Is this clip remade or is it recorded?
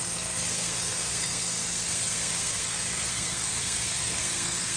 remade